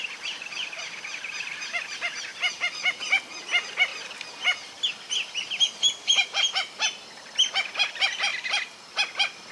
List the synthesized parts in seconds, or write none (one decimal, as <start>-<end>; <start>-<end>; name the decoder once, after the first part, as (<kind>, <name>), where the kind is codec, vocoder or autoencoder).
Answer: 0.0-2.3 (vocoder, BigVGAN v2); 3.4-3.9; 4.9-9.5